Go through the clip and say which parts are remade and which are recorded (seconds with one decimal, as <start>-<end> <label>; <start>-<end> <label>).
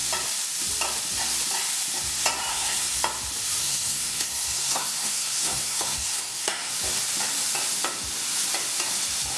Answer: 0.0-2.5 recorded; 2.5-3.0 remade; 3.0-3.6 recorded; 3.6-6.7 remade; 6.7-9.4 recorded